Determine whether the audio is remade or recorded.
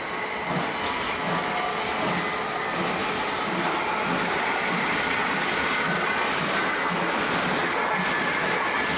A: recorded